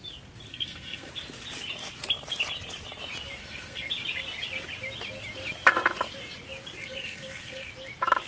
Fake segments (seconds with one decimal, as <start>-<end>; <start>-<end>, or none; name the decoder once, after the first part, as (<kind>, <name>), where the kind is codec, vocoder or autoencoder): 0.5-1.1 (codec, SNAC); 3.4-3.9; 6.8-7.7